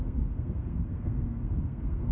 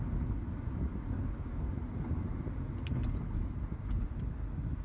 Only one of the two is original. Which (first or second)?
second